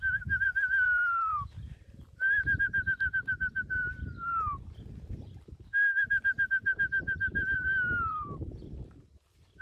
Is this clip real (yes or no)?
no